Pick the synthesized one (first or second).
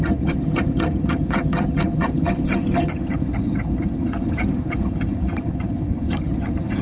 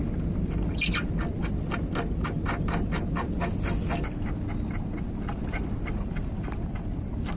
first